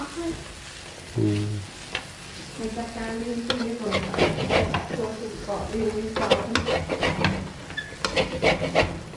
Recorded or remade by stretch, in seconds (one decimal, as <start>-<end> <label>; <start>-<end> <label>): 0.0-9.2 recorded